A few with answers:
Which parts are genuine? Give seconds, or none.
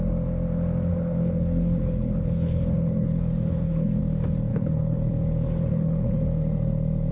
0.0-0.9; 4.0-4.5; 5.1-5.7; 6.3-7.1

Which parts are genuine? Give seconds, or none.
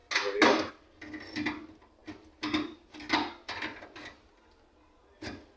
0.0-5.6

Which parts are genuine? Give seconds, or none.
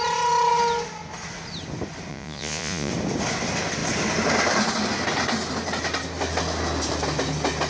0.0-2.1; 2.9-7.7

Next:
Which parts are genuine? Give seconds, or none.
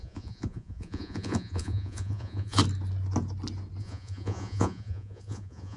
2.6-3.8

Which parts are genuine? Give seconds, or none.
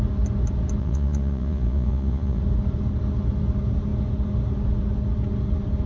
0.0-0.8; 2.4-5.9